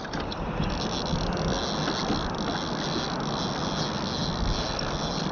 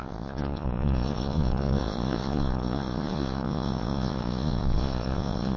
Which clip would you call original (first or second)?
first